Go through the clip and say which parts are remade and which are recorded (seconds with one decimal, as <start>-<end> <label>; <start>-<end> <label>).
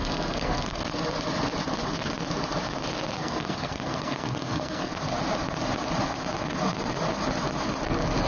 0.0-0.8 remade; 0.8-3.2 recorded; 3.2-4.9 remade; 4.9-8.3 recorded